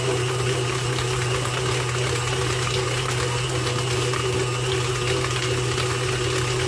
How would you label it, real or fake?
real